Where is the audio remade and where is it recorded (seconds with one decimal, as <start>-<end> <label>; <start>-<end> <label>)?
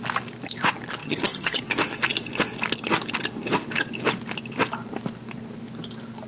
0.0-1.0 recorded; 1.0-1.6 remade; 1.6-6.3 recorded